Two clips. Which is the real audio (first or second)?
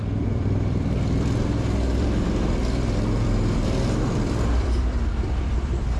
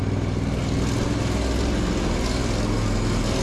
second